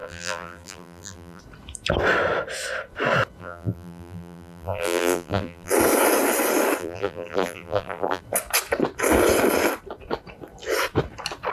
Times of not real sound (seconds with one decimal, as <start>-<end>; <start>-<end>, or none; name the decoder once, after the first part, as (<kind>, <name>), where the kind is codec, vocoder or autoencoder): 0.0-1.4 (vocoder, BigVGAN v2); 3.4-5.7; 6.8-8.2